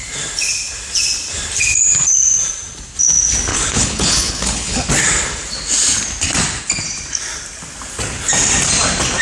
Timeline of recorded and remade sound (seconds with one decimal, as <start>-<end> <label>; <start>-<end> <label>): 0.0-3.5 recorded; 3.5-4.9 remade; 4.9-9.2 recorded